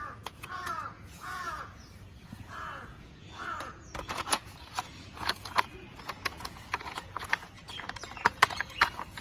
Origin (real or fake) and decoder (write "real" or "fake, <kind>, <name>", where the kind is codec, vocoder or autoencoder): fake, vocoder, Vocos